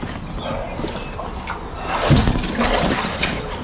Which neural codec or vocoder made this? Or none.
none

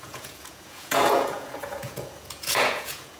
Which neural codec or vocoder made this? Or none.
vocoder, Vocos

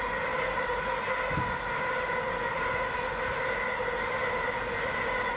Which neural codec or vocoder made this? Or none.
none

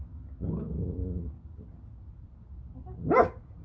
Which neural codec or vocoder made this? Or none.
none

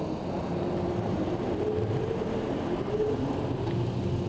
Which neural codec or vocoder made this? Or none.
none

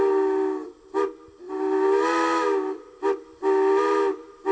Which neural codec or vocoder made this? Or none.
none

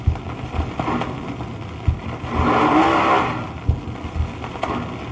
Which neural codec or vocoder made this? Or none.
none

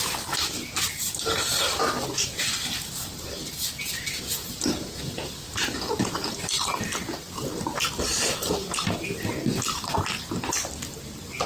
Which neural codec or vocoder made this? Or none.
vocoder, BigVGAN v2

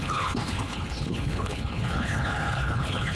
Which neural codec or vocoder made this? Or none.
codec, HILCodec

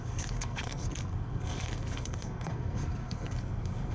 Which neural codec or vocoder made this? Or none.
codec, SNAC